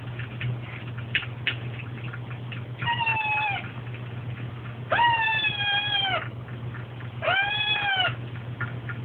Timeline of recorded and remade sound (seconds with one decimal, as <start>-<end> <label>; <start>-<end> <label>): 0.0-9.0 recorded